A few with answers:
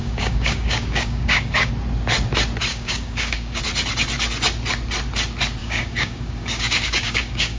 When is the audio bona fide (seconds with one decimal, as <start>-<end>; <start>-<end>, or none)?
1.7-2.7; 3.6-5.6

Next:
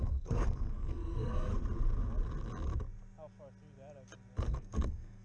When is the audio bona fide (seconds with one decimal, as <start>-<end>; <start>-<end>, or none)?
1.5-4.4

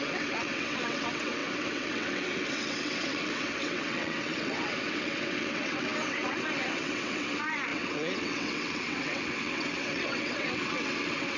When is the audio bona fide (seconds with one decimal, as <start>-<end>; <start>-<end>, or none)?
none